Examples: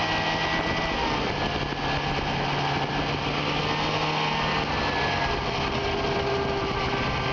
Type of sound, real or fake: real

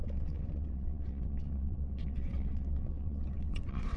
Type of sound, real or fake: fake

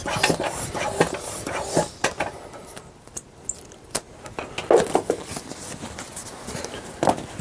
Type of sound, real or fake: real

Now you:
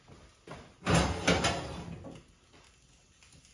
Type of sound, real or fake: real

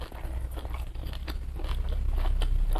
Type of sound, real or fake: real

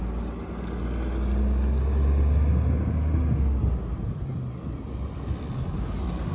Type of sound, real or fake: real